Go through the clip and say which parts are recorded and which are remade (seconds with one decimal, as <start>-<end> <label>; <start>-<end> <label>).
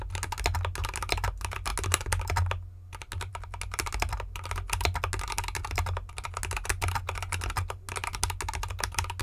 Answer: 0.0-9.2 recorded